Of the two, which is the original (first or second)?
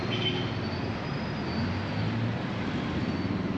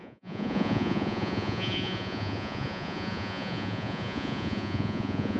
first